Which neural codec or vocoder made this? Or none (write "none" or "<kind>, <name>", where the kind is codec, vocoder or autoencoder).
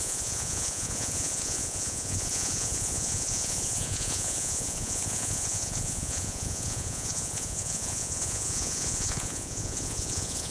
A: vocoder, Vocos